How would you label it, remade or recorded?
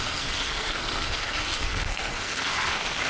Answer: remade